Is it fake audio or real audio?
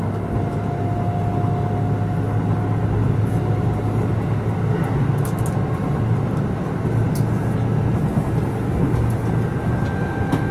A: real